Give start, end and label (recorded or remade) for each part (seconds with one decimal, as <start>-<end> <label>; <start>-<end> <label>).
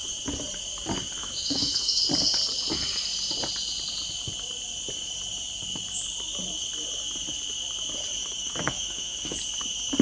0.0-1.2 recorded; 1.2-2.0 remade; 2.0-8.2 recorded; 8.2-9.4 remade; 9.4-10.0 recorded